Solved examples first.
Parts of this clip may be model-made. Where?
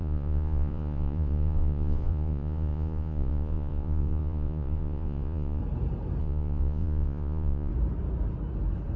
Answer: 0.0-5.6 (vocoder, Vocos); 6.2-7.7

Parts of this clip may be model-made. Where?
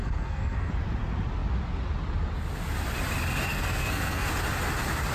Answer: 0.0-0.7 (codec, SNAC); 3.5-4.3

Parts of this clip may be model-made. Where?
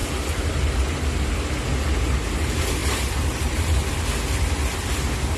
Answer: 2.8-3.9 (vocoder, BigVGAN v2)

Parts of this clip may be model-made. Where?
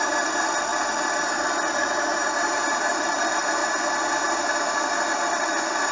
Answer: 0.0-0.7 (vocoder, BigVGAN v2); 1.7-3.6; 4.5-5.9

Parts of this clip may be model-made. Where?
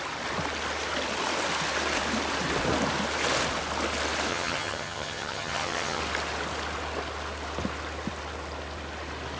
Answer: 4.3-6.0 (vocoder, HiFi-GAN)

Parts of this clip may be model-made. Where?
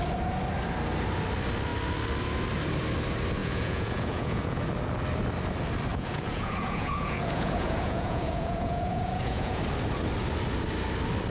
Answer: 3.4-4.6 (vocoder, Vocos); 5.9-9.6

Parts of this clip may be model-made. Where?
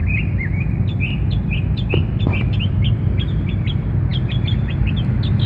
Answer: none